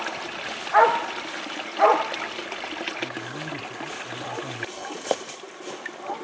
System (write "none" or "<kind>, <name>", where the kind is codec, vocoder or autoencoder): none